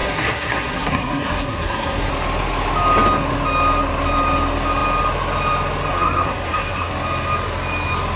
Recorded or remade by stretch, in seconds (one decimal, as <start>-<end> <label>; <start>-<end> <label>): 0.0-2.1 remade; 2.1-5.9 recorded; 5.9-6.9 remade; 6.9-8.2 recorded